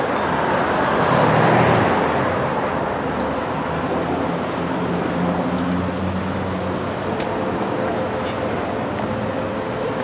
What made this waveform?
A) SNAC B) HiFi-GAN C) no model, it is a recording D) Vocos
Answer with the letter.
C